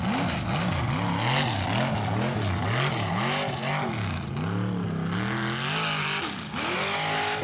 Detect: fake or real real